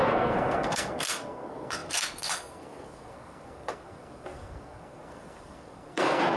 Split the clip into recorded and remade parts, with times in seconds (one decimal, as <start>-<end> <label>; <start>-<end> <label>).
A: 0.0-6.4 remade